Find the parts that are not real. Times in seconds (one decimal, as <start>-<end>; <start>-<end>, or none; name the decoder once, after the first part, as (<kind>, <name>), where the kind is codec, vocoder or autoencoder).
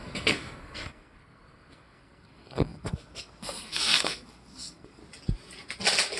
0.0-5.0 (codec, SNAC)